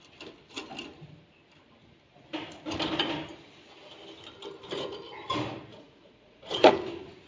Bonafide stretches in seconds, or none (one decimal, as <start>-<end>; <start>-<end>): 0.0-5.7; 6.7-7.3

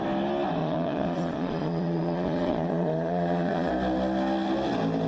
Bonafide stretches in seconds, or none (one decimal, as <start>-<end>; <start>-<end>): 0.0-0.6; 3.7-5.1

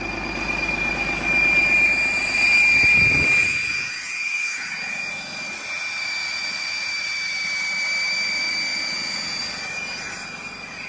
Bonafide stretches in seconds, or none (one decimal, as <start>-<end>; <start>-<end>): 0.0-3.4; 5.1-6.2; 6.9-8.7; 9.4-10.9

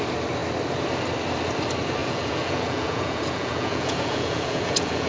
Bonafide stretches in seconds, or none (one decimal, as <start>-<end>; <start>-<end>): 0.0-2.0

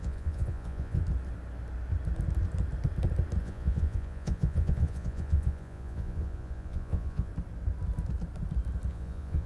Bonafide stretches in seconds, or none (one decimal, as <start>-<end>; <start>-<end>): 1.0-3.4; 7.3-8.9

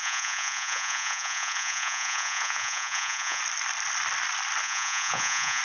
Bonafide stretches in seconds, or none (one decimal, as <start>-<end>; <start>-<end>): 3.4-4.6

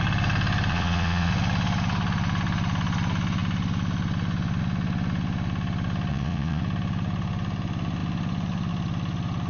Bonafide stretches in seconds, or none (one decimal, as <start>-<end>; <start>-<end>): 0.0-0.7; 1.3-6.1; 6.6-9.5

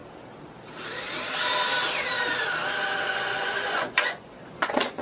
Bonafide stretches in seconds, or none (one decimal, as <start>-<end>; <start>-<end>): 0.0-3.0